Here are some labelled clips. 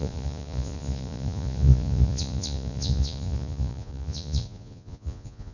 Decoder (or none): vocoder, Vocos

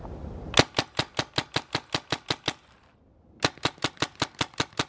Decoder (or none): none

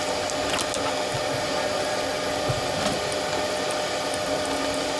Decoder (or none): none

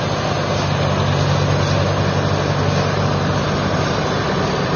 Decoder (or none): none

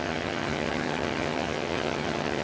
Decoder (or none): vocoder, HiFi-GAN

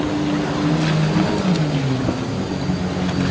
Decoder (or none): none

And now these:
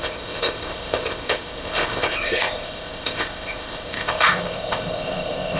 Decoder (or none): codec, ZipCodec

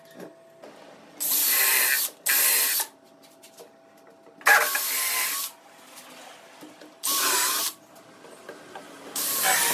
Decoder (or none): none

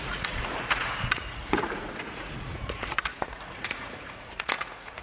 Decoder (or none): vocoder, Vocos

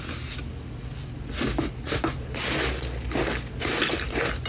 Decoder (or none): none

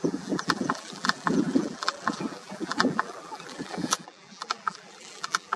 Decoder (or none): vocoder, BigVGAN v2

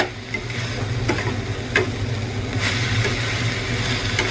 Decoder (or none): none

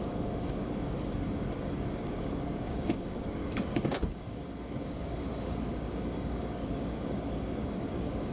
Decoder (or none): codec, DAC